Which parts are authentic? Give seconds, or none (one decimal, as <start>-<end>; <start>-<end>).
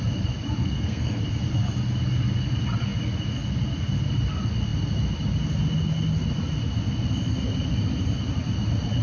0.0-0.6; 1.2-9.0